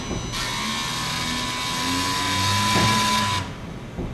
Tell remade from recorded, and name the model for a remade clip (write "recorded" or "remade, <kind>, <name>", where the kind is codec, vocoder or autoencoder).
recorded